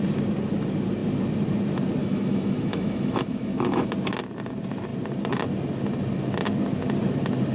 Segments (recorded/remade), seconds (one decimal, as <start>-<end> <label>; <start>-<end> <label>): 0.0-2.0 recorded; 2.0-3.9 remade; 3.9-7.5 recorded